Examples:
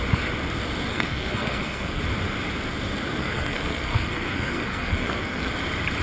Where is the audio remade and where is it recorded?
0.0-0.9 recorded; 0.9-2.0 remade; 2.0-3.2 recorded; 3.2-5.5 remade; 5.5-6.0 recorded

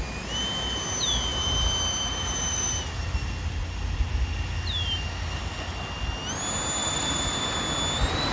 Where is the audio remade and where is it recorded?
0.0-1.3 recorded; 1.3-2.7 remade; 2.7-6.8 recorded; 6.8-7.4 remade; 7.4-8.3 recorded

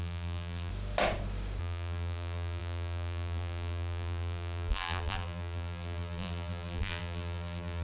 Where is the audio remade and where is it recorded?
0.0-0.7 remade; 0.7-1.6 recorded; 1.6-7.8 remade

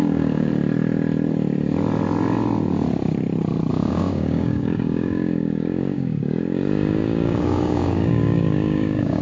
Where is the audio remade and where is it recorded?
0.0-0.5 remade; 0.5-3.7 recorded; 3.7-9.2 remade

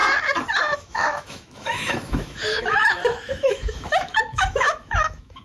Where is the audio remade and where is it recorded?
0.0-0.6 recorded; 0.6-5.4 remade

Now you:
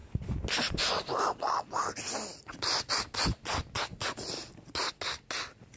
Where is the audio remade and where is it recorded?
0.0-5.8 recorded